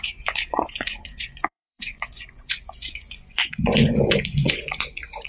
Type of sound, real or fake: fake